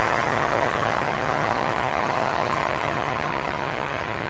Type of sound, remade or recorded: remade